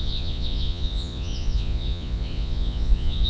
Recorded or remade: remade